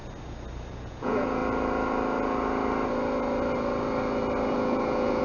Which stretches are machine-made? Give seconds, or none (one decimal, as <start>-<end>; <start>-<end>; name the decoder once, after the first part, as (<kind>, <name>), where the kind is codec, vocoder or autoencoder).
0.7-1.4 (vocoder, Vocos); 4.5-5.2